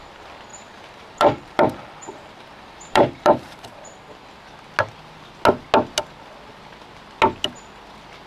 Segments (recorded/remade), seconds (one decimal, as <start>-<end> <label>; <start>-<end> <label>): 0.0-0.5 recorded; 0.5-4.1 remade; 4.1-8.3 recorded